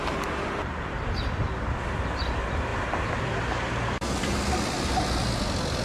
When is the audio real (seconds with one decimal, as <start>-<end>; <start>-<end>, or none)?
1.0-5.8